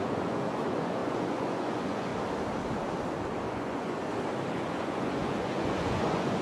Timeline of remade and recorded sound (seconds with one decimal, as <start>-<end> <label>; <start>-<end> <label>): 0.0-2.1 remade; 2.1-3.5 recorded; 3.5-4.0 remade; 4.0-4.5 recorded; 4.5-6.4 remade